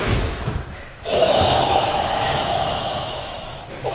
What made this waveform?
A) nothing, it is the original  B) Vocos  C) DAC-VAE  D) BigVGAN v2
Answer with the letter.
C